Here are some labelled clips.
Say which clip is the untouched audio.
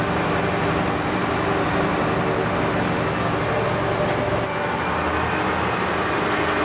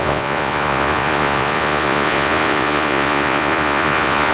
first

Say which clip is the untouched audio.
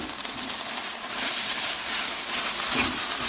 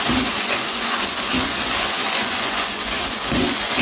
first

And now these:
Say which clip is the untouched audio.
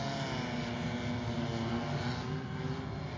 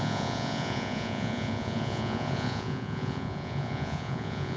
first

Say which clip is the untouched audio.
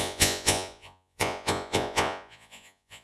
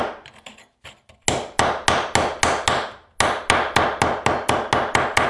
second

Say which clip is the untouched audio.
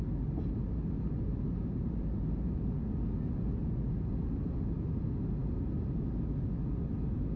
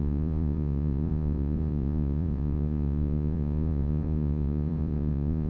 first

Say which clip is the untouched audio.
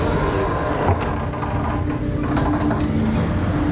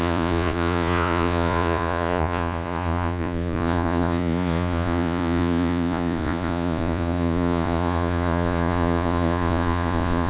first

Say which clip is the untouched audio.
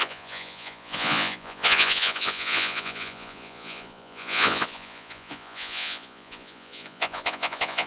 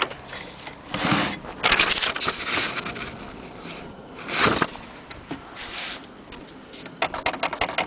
second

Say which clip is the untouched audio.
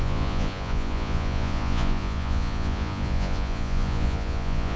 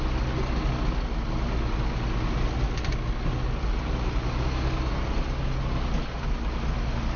second